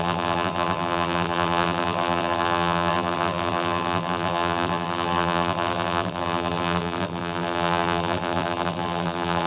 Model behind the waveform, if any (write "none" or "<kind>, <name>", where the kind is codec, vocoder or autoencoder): vocoder, BigVGAN v2